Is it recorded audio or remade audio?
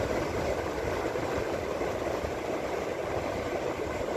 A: recorded